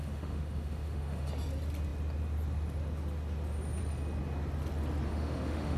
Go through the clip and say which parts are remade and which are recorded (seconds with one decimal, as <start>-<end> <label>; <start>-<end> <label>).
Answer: 0.0-1.3 remade; 1.3-5.1 recorded; 5.1-5.8 remade